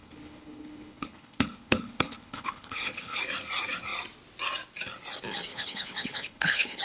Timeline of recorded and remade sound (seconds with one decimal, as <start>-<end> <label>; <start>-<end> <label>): 0.0-3.2 remade; 3.2-5.5 recorded; 5.5-6.8 remade